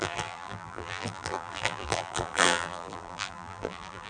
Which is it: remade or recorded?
remade